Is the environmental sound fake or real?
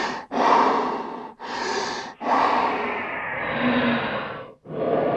real